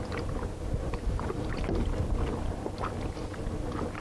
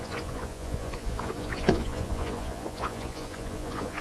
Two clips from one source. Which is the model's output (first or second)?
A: second